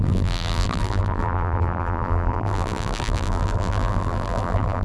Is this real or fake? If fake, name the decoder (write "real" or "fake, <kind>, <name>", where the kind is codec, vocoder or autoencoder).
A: fake, vocoder, BigVGAN v2